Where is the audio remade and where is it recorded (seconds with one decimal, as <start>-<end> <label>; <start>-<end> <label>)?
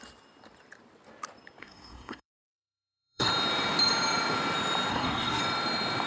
0.0-1.6 recorded; 1.6-3.3 remade; 3.3-4.9 recorded; 4.9-5.4 remade; 5.4-6.1 recorded